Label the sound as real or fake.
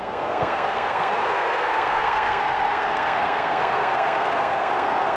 fake